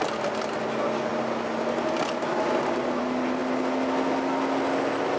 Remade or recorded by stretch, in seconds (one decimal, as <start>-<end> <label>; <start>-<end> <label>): 0.0-5.2 recorded